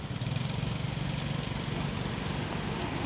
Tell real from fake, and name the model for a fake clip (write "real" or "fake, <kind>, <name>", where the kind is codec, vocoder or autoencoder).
real